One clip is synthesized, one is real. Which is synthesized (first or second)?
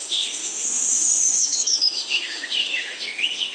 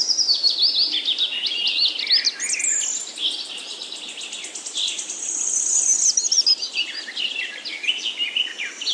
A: first